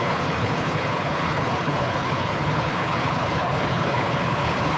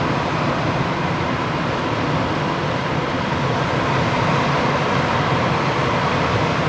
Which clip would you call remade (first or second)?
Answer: first